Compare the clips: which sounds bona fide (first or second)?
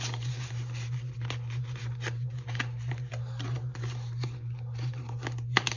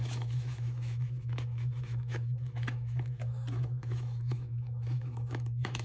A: first